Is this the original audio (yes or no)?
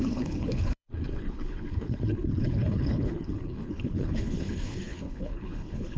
no